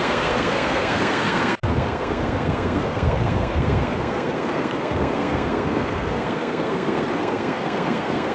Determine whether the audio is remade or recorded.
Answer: remade